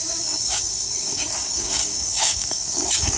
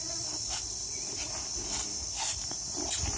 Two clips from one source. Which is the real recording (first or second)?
second